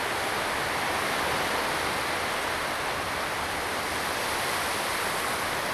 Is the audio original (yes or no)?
yes